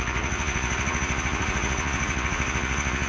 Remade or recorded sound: remade